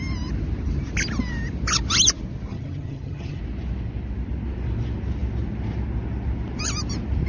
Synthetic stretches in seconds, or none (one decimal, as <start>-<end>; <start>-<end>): 2.5-3.4